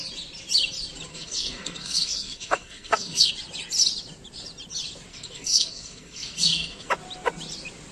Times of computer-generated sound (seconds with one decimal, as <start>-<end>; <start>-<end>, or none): 1.1-3.3; 5.1-6.9